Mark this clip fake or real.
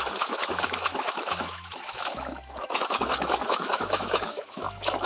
fake